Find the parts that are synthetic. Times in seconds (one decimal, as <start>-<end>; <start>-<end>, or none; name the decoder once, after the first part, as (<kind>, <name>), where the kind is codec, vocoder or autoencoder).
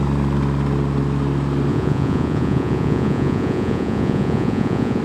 1.7-5.0 (vocoder, Vocos)